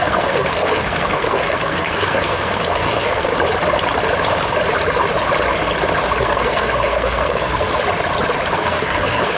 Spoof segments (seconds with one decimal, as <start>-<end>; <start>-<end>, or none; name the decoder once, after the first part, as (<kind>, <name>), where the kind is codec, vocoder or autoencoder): 0.0-3.3 (codec, SNAC); 6.2-7.7; 8.5-9.4